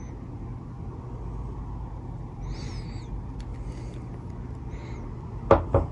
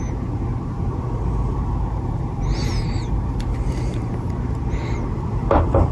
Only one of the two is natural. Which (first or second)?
first